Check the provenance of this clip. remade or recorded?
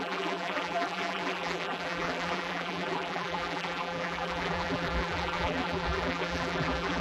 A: remade